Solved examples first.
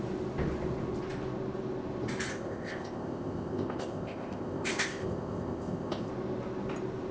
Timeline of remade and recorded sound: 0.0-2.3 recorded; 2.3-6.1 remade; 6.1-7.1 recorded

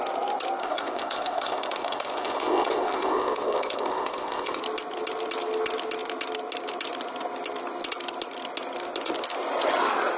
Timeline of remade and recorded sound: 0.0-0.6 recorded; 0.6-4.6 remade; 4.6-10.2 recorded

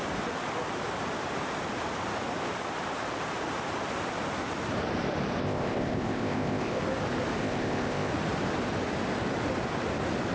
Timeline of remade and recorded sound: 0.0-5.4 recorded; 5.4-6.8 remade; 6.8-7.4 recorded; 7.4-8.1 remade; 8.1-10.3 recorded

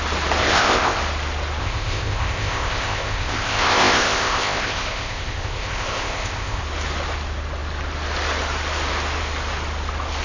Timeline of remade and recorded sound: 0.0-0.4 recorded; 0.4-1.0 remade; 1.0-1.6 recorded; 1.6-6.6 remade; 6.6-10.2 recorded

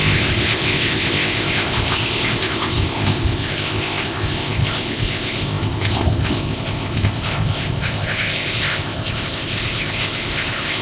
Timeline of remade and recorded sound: 0.0-10.8 remade

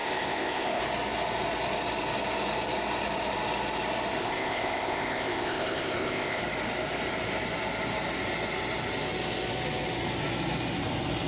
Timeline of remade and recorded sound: 0.0-0.8 remade; 0.8-4.2 recorded; 4.2-6.4 remade; 6.4-11.3 recorded

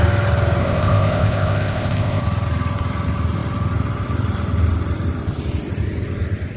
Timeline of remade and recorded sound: 0.0-0.6 recorded; 0.6-2.2 remade; 2.2-6.6 recorded

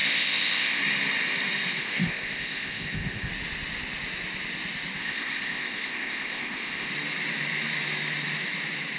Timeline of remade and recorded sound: 0.0-0.8 remade; 0.8-1.8 recorded; 1.8-3.3 remade; 3.3-5.0 recorded; 5.0-6.9 remade; 6.9-9.0 recorded